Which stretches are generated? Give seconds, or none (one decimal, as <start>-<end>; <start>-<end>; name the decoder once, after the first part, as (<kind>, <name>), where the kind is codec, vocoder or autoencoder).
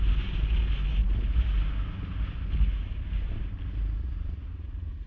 4.0-5.1 (vocoder, Vocos)